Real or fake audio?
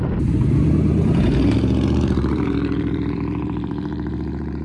fake